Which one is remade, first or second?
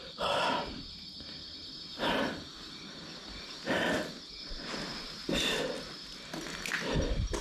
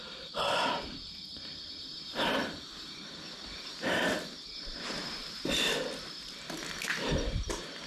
second